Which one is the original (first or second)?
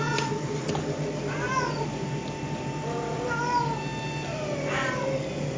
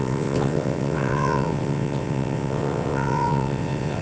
first